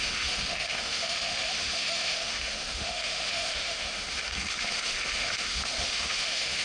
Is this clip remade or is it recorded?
remade